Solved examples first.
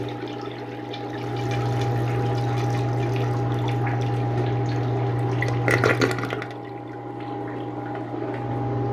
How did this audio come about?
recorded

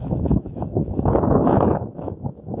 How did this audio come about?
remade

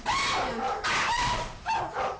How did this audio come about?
recorded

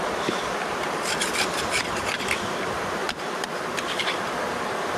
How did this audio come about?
remade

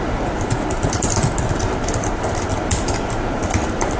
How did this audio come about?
remade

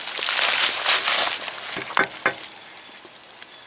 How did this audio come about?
recorded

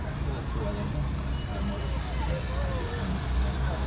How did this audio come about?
recorded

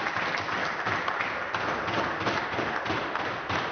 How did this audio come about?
recorded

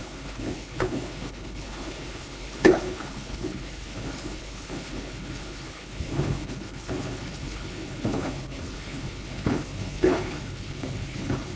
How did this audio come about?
remade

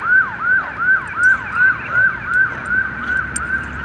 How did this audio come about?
recorded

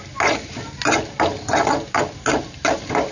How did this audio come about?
recorded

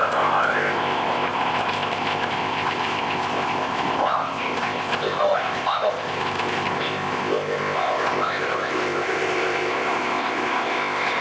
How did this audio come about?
remade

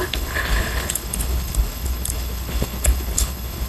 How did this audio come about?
remade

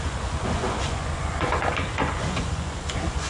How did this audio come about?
remade